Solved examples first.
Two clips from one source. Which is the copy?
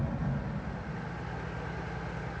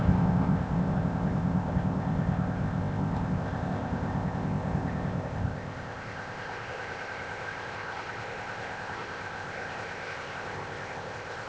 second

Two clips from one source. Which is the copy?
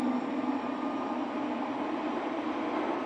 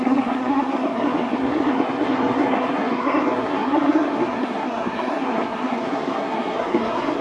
second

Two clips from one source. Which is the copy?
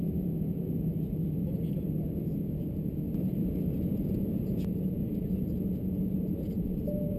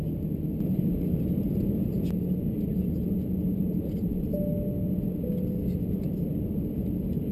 first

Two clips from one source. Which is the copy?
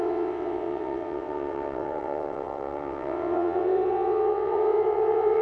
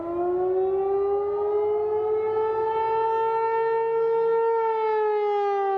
first